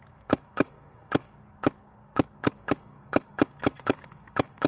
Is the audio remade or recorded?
remade